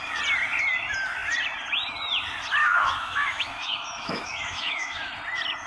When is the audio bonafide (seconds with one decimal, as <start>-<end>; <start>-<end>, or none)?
0.0-2.6; 5.1-5.7